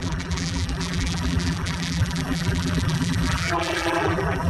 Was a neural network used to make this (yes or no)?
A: yes